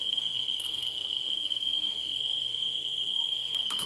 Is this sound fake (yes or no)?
yes